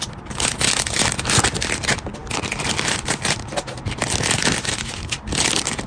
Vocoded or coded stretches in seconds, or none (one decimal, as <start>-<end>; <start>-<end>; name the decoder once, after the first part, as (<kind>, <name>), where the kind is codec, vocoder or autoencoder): none